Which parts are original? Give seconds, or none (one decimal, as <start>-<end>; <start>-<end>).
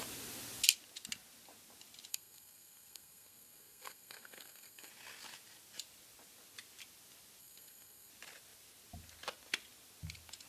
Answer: 0.0-2.1; 4.9-7.4; 8.1-10.5